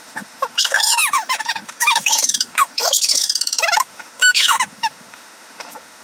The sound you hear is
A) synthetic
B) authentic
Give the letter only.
A